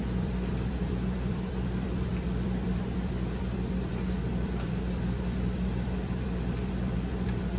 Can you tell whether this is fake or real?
fake